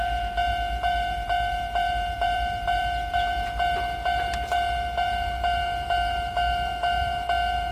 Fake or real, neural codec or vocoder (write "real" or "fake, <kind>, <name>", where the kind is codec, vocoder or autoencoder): fake, vocoder, BigVGAN v2